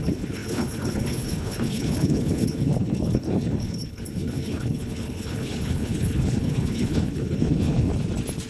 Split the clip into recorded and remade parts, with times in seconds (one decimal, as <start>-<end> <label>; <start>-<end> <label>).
0.0-7.9 remade; 7.9-8.5 recorded